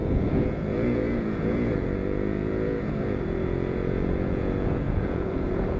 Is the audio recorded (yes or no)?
no